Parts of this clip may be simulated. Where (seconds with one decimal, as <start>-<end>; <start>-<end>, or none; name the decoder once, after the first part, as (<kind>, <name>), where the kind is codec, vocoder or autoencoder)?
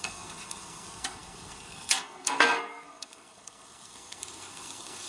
0.0-5.1 (codec, SNAC)